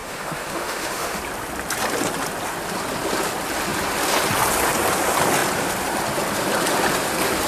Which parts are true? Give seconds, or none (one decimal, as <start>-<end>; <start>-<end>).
1.2-7.5